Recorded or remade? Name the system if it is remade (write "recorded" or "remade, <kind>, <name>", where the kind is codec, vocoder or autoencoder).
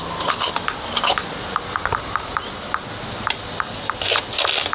recorded